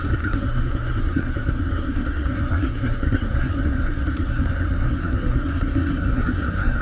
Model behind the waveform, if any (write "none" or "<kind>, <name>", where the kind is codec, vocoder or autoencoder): codec, SNAC